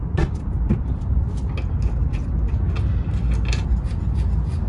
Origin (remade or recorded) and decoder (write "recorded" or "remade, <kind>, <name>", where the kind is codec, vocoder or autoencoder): recorded